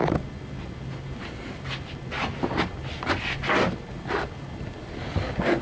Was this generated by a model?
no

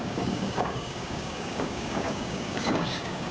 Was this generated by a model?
yes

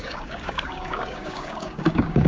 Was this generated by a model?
yes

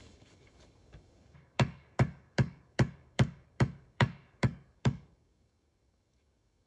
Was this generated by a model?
yes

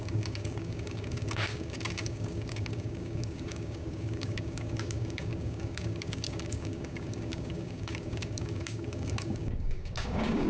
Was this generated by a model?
yes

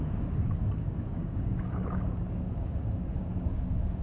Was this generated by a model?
yes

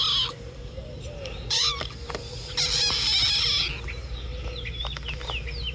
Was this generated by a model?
no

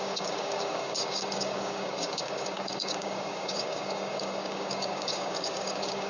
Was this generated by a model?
yes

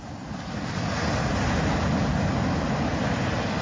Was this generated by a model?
no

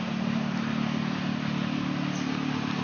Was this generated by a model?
no